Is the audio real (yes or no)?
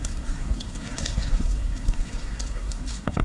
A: no